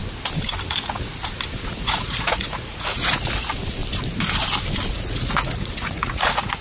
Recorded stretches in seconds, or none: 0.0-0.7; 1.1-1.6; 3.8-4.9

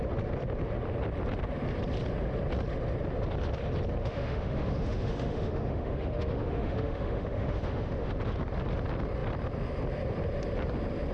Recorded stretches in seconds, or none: 0.0-4.0; 8.1-11.1

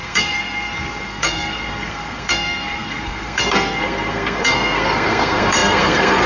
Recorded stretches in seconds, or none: none